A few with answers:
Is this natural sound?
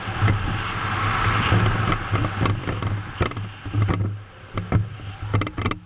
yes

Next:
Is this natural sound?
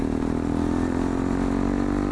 yes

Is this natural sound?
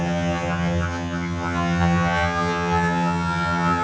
no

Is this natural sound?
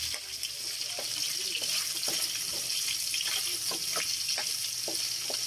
yes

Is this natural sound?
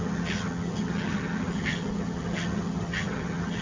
no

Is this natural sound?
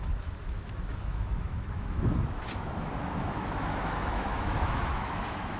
no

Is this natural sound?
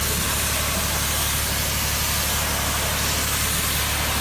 yes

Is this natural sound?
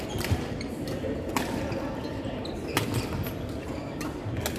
yes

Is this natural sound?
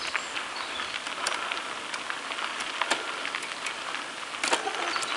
yes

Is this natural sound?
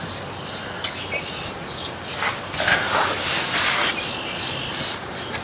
yes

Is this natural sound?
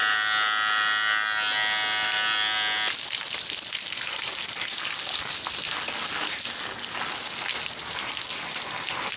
yes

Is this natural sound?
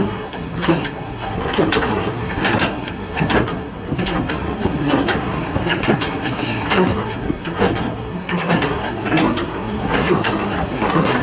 no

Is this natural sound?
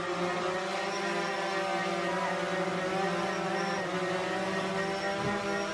yes